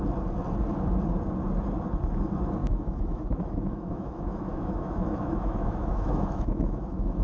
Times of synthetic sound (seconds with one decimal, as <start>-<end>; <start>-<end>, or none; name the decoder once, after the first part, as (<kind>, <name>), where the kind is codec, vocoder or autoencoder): 2.6-7.2 (autoencoder, DAC-VAE)

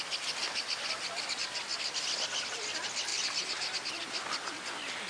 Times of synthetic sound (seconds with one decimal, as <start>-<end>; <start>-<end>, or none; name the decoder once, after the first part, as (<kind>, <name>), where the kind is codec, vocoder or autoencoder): none

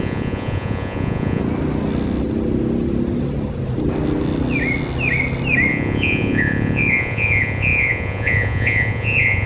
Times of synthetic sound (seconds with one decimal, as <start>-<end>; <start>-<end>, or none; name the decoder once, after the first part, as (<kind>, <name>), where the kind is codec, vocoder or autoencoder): 0.0-1.4 (vocoder, Vocos); 5.7-9.5

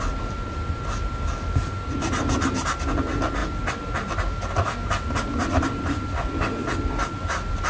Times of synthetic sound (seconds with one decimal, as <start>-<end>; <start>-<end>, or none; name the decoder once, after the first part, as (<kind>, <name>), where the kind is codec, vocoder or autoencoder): none